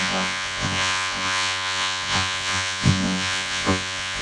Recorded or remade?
remade